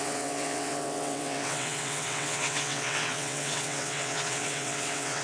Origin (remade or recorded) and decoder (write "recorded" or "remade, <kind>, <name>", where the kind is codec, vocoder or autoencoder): remade, vocoder, WaveNeXt